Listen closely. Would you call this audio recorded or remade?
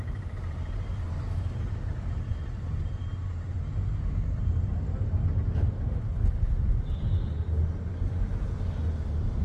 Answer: recorded